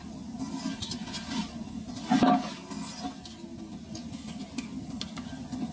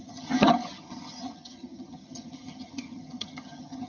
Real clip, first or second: first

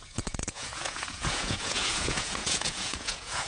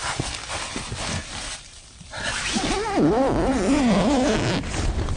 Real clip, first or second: second